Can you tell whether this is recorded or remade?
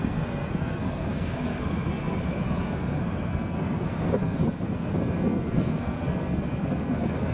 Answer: remade